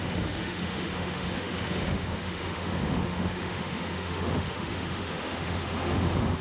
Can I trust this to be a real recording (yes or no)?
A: no